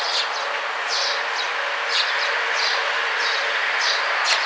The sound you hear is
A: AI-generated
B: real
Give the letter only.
B